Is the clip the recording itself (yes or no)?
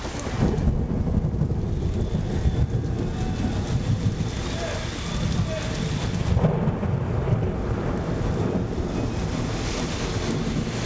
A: yes